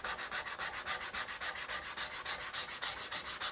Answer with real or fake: real